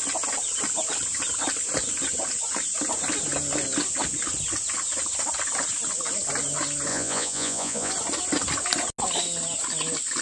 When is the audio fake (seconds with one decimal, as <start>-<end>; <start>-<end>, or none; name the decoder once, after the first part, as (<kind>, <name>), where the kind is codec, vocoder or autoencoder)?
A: 6.9-7.9 (vocoder, Vocos)